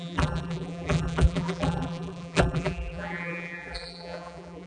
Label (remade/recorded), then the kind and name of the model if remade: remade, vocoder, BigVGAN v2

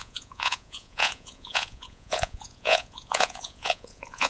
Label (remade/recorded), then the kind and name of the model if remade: remade, vocoder, Vocos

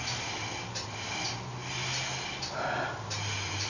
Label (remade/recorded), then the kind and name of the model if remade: recorded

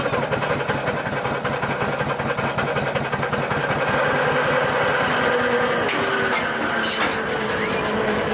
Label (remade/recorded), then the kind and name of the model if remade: recorded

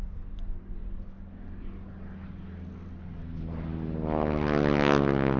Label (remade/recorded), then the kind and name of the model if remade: recorded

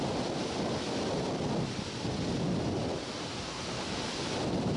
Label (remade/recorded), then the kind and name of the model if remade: recorded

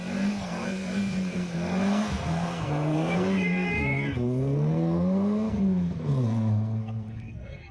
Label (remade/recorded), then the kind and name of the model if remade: remade, codec, SNAC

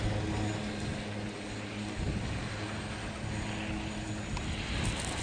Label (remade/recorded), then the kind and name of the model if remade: recorded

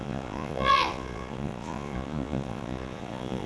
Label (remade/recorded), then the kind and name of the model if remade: remade, vocoder, Vocos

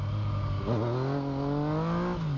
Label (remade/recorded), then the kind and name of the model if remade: recorded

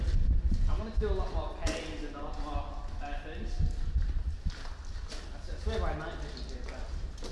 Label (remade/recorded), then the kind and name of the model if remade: recorded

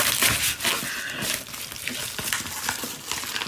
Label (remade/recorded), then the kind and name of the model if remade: recorded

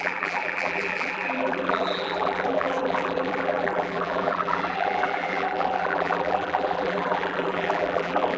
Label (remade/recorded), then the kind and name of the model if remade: remade, vocoder, BigVGAN v2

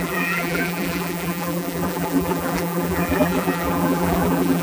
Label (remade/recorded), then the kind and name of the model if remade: remade, vocoder, BigVGAN v2